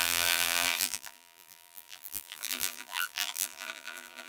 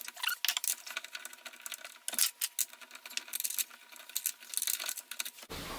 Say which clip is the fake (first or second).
first